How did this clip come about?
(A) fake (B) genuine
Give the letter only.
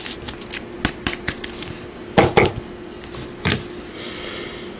B